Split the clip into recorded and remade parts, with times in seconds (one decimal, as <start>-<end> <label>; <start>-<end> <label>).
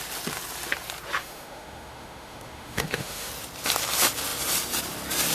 0.0-1.2 recorded; 1.2-3.3 remade; 3.3-5.3 recorded